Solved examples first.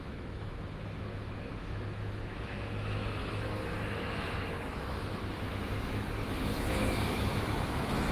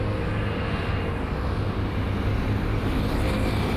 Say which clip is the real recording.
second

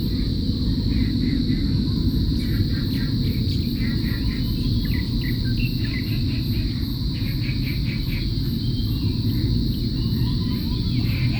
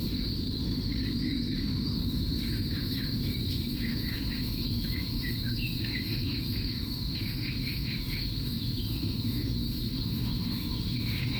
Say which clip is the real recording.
first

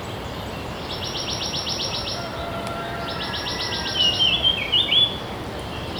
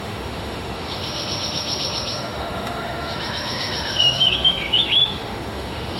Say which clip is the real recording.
first